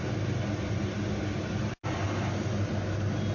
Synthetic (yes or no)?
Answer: no